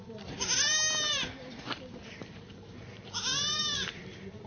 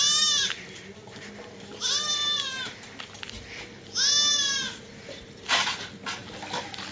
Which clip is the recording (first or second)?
second